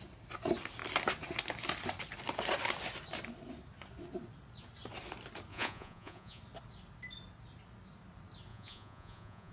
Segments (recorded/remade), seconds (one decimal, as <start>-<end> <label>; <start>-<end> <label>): 0.0-5.5 recorded; 5.5-6.4 remade; 6.4-8.5 recorded; 8.5-9.5 remade